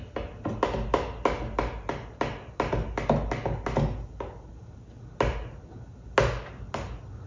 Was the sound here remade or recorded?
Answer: recorded